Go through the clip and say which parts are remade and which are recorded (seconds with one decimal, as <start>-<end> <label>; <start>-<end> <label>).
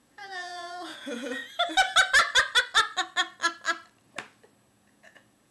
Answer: 0.0-1.4 remade; 1.4-4.7 recorded; 4.7-5.5 remade